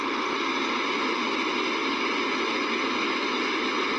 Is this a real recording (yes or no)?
yes